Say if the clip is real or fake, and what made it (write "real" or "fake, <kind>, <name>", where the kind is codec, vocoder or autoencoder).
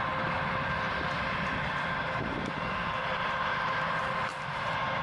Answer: real